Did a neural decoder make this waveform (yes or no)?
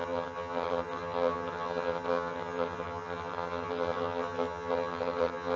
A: yes